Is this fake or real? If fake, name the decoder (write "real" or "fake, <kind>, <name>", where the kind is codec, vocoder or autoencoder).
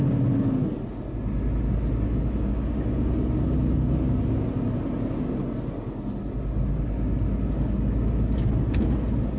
real